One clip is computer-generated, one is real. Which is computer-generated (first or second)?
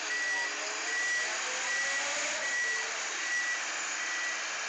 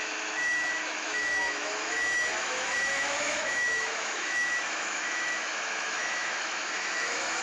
second